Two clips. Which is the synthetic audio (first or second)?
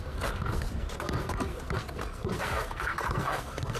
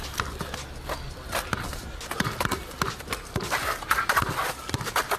first